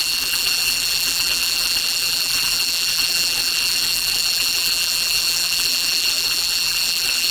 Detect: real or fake fake